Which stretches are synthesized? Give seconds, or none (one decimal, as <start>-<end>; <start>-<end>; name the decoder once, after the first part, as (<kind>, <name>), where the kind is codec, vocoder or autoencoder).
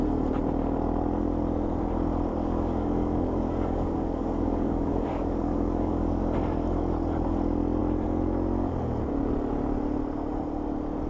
2.3-6.2 (codec, DAC)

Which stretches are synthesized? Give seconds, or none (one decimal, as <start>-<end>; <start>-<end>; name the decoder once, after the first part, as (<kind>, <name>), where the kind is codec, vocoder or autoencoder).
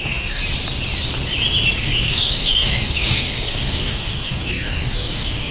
0.0-0.4 (codec, DAC); 1.8-5.5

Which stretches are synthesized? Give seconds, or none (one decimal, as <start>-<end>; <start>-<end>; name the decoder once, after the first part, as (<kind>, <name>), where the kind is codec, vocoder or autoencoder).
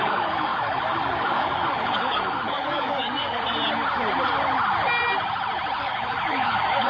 0.0-3.3 (codec, DAC); 5.8-6.9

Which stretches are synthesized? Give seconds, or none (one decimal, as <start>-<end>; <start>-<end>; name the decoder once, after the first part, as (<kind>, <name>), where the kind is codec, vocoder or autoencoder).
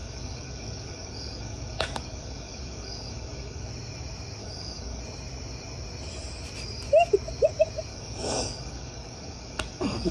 0.0-3.7 (codec, DAC); 4.4-5.0; 7.9-10.1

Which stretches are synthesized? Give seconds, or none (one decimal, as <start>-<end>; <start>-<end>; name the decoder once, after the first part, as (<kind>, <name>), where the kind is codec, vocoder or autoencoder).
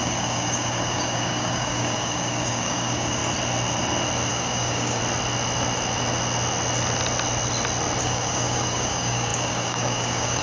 0.0-3.2 (codec, DAC); 4.3-5.0; 8.0-10.4